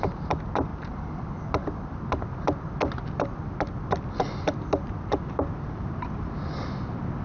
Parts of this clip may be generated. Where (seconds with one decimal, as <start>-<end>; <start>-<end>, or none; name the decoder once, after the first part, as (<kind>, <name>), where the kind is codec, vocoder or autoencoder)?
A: none